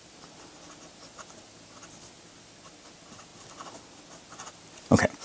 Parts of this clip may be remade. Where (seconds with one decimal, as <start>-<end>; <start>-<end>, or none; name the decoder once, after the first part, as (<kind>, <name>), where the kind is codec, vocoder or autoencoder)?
none